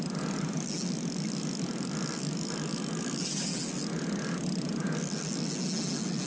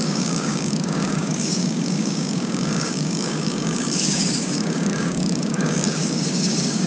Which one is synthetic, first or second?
second